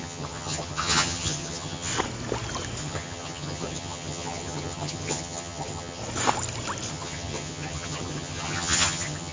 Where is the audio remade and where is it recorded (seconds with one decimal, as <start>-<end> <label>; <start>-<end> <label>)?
0.0-1.9 remade; 1.9-2.8 recorded; 2.8-6.0 remade; 6.0-6.9 recorded; 6.9-9.3 remade